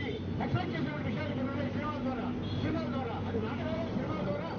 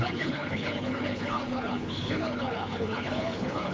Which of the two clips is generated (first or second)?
second